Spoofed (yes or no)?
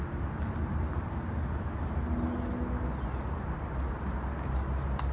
no